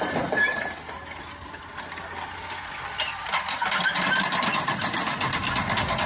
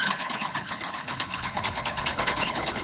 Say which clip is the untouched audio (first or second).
first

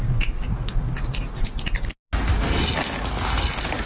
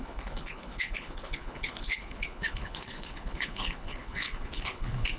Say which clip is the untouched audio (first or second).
first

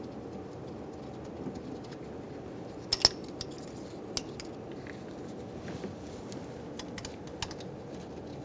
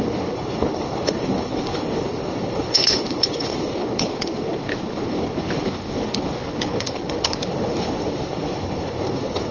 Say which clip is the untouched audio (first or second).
first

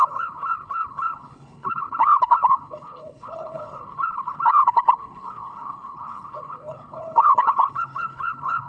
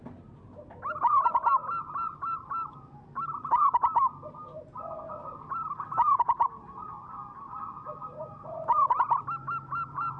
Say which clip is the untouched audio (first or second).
second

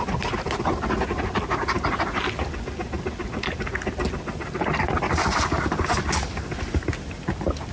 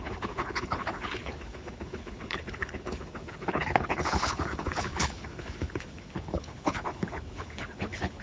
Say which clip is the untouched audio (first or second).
first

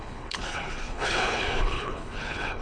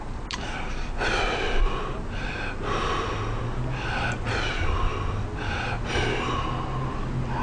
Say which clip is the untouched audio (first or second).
second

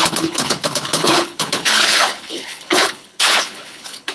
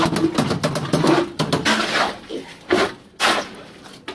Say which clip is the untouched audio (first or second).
second